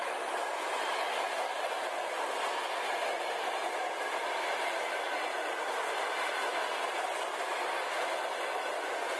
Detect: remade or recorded recorded